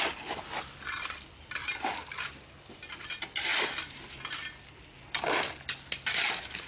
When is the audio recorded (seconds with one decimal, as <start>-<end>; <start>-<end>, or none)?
0.0-3.5; 4.2-6.7